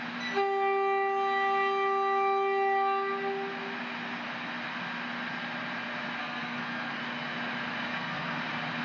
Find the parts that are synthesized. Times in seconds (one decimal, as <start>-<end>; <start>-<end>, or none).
6.2-7.0; 7.9-8.4